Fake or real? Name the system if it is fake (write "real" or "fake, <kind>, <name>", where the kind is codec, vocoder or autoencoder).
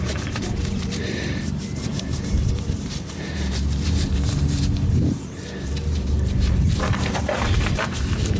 fake, vocoder, BigVGAN v2